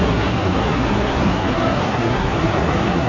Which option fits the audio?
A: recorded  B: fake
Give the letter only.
B